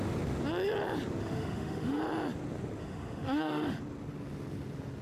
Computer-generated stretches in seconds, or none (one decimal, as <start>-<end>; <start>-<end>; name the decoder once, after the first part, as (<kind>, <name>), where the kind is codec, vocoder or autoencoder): 1.2-2.0 (autoencoder, DAC-VAE); 2.8-3.8